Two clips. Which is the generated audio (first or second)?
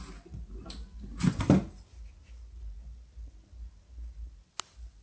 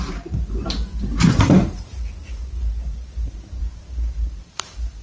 second